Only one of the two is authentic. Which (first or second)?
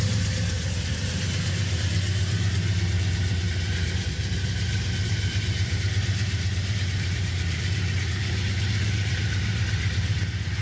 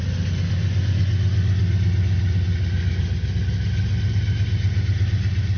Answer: second